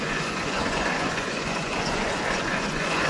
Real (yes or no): no